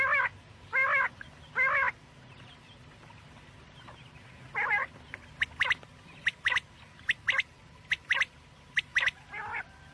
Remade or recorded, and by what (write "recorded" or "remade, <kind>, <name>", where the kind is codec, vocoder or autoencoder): recorded